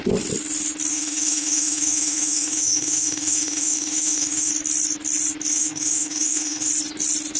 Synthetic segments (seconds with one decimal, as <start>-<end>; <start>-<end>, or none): 0.9-4.5; 5.5-6.7